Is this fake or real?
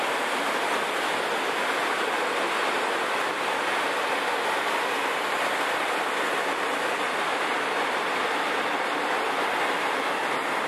real